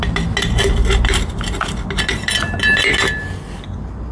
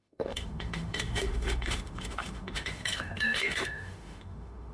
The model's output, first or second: second